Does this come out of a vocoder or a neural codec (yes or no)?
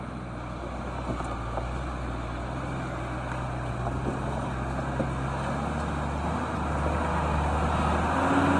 no